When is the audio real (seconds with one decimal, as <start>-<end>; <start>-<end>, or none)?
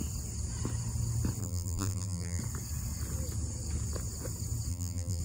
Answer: 0.0-1.4; 2.4-4.7